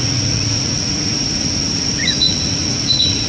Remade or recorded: remade